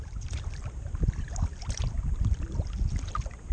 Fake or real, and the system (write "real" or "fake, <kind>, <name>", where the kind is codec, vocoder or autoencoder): real